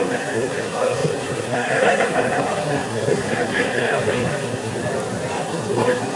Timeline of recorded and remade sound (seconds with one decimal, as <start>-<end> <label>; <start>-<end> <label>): 0.0-4.8 remade; 4.8-5.4 recorded; 5.4-6.2 remade